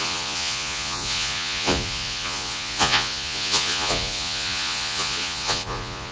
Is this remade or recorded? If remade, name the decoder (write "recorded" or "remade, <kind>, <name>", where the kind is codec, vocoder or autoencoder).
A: remade, vocoder, Vocos